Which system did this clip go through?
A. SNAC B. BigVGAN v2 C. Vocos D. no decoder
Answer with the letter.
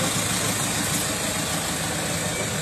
D